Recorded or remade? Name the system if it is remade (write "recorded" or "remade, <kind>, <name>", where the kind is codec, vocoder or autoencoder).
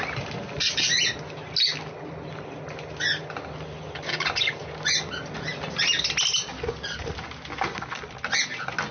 recorded